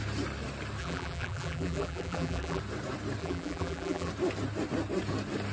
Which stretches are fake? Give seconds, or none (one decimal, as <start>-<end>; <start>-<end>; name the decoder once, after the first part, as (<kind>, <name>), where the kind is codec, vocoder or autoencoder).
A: 0.8-2.6 (vocoder, BigVGAN v2); 3.2-4.1